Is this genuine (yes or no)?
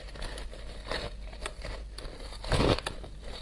yes